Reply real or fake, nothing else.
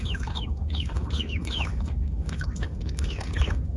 fake